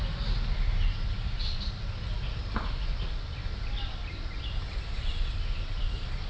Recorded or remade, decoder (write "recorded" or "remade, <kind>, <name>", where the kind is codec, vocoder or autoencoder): recorded